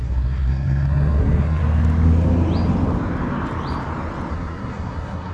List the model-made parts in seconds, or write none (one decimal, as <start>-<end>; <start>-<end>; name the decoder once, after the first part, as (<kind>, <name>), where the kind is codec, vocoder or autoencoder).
0.0-1.6 (codec, SNAC); 4.3-5.3